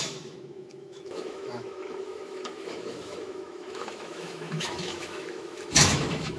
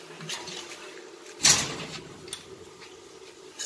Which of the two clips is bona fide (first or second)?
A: second